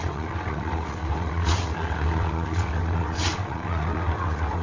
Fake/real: fake